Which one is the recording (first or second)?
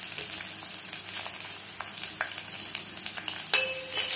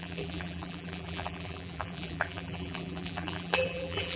first